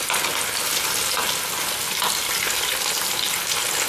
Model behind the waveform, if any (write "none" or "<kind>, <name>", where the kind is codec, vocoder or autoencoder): none